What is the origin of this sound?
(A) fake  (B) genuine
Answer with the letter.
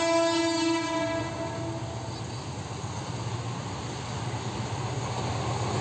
B